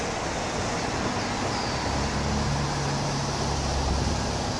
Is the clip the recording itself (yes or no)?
yes